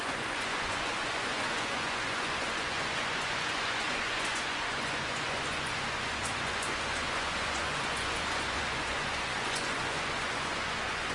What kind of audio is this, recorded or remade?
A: remade